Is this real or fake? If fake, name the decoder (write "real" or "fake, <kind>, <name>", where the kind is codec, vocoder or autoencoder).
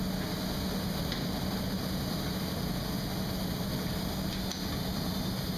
real